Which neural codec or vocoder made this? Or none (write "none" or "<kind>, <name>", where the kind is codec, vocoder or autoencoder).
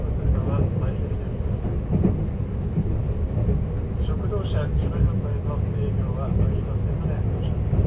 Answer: none